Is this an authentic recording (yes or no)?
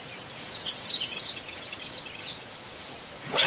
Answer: no